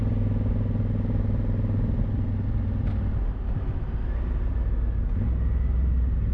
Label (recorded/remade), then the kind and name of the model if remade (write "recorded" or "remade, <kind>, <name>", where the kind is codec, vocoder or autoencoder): recorded